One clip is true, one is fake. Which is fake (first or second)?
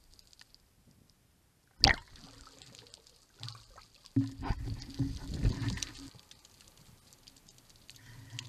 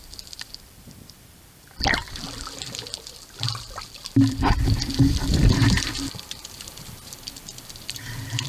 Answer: second